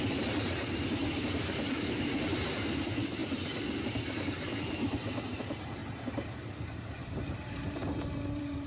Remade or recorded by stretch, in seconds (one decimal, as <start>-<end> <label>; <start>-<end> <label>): 0.0-3.2 remade; 3.2-3.9 recorded; 3.9-5.8 remade; 5.8-6.8 recorded; 6.8-8.7 remade